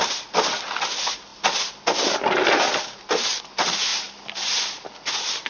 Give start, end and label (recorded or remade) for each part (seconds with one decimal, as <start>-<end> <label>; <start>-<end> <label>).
0.0-5.5 recorded